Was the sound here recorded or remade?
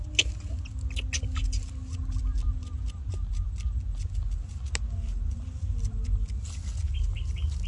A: recorded